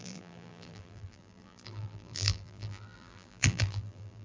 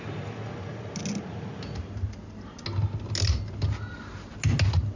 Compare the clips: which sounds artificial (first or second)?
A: first